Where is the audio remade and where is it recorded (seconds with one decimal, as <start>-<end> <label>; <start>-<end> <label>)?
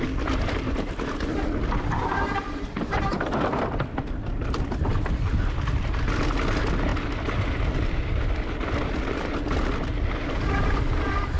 0.0-11.4 recorded